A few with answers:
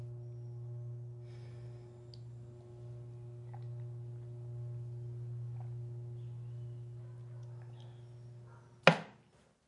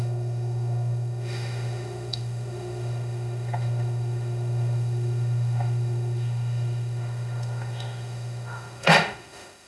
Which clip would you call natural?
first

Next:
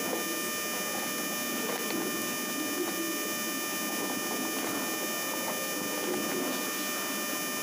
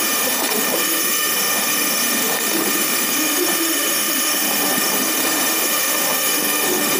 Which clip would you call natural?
first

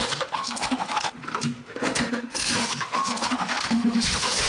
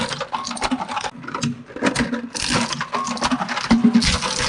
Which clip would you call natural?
second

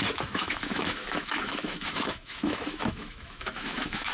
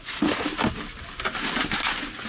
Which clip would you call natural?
second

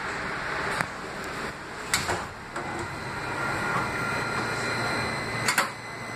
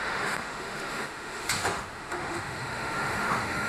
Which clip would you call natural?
first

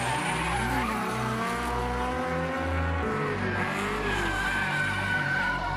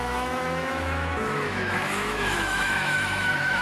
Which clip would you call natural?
first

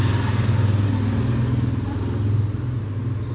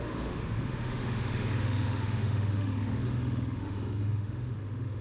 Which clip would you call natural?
first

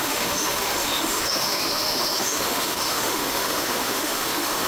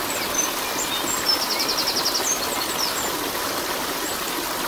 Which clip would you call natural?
second